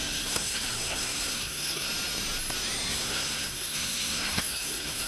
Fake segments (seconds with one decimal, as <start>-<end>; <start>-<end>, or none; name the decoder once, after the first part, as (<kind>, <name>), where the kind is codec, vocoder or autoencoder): 0.0-1.9 (codec, SNAC); 2.9-5.1